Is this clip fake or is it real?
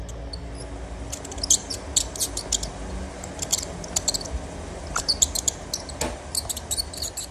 real